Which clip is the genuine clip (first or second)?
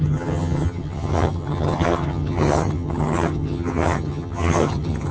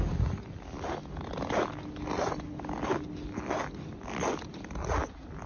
second